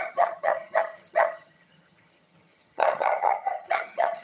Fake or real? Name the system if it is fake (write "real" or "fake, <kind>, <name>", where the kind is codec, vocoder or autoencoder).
fake, vocoder, HiFi-GAN